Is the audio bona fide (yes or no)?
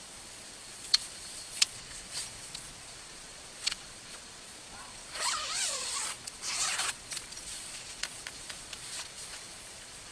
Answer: no